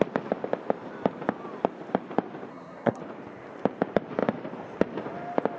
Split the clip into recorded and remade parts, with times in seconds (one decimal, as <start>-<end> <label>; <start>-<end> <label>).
0.0-2.5 recorded; 2.5-3.0 remade; 3.0-5.6 recorded